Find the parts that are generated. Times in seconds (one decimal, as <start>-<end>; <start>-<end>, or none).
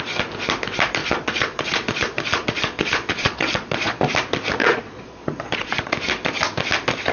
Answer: 1.0-4.0; 4.6-5.9